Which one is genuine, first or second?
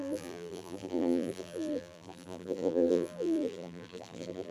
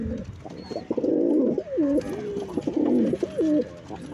second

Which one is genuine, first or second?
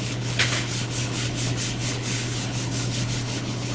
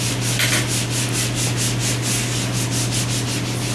second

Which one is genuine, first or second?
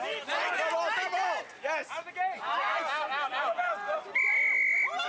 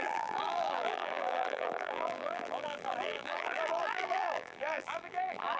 first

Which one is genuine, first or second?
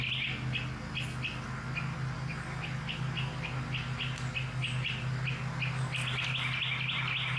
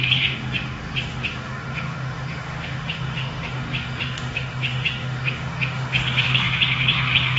first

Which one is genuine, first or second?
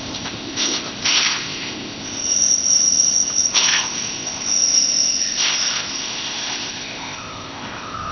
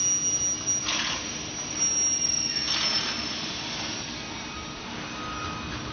second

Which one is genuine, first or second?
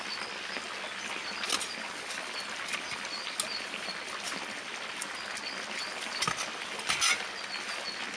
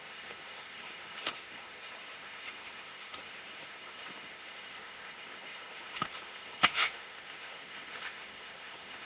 first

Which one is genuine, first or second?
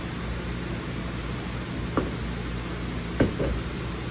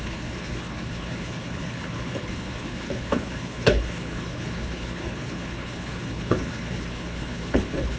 first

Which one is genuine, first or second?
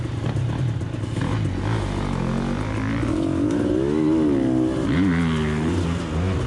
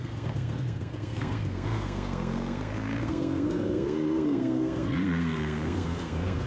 first